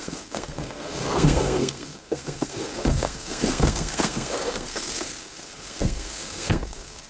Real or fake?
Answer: fake